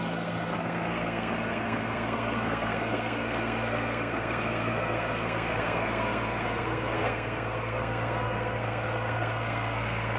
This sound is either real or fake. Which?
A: fake